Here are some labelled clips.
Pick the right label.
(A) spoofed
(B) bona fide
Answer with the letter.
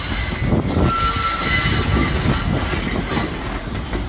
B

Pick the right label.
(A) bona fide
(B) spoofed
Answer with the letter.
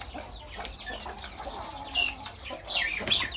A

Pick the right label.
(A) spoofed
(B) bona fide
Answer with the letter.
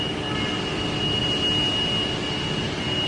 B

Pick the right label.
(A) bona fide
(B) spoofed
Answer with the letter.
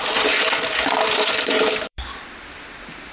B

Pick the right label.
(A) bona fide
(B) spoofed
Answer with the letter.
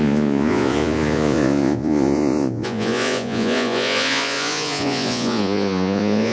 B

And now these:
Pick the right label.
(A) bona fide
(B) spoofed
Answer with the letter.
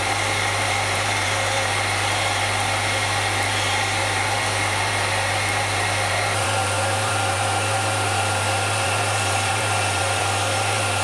B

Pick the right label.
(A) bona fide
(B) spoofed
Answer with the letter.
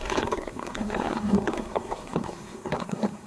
B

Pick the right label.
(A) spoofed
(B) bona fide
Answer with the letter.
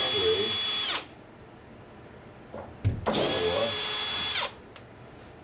B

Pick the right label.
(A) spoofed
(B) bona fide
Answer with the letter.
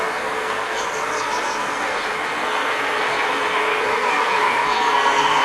A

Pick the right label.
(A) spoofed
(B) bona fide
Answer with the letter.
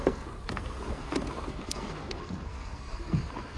A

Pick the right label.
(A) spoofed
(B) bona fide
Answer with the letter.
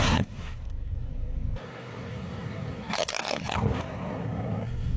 A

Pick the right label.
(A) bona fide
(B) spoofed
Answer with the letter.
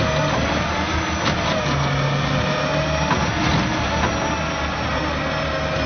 A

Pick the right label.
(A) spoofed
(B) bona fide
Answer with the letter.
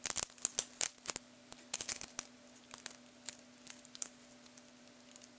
B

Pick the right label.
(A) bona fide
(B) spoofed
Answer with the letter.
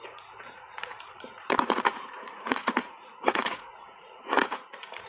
B